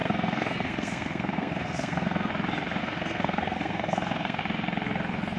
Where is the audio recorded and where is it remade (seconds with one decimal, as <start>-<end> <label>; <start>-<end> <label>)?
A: 0.0-2.3 remade; 2.3-2.8 recorded; 2.8-4.4 remade; 4.4-5.4 recorded